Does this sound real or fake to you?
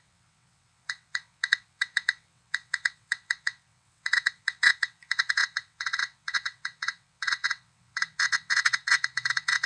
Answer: fake